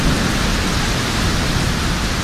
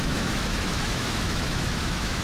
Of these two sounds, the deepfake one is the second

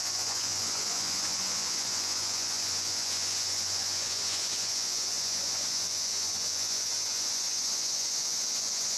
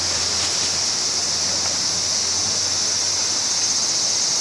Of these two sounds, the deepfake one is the first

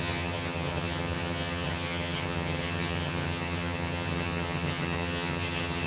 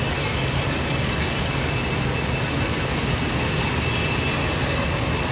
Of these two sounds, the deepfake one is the first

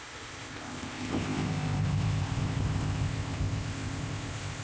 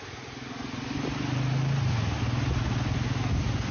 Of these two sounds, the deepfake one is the first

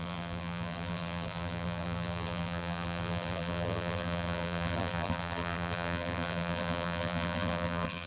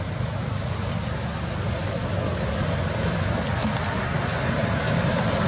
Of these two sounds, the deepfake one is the first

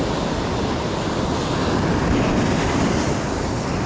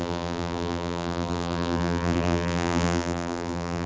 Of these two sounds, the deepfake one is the second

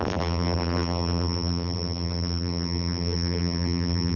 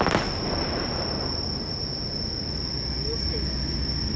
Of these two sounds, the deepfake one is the first